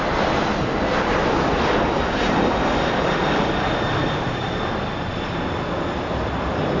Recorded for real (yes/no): yes